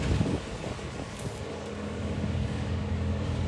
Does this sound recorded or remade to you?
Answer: remade